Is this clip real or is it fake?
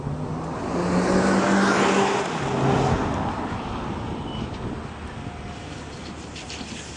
real